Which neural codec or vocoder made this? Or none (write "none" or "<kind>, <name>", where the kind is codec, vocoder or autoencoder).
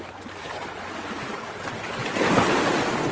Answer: none